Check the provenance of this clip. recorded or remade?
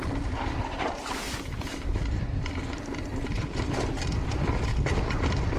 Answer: remade